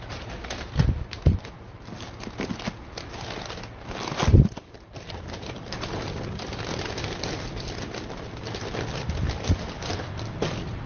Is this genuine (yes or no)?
yes